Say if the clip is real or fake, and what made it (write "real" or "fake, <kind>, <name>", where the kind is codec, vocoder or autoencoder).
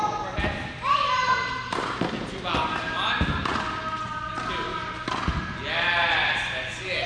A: real